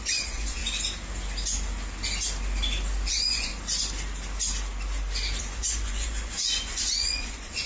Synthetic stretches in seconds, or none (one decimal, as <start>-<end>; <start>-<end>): 0.0-0.6; 3.1-3.5; 5.4-7.7